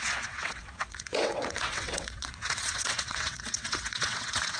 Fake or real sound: fake